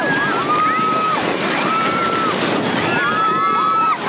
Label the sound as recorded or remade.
recorded